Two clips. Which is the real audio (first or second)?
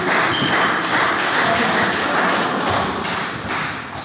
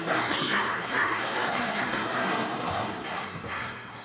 first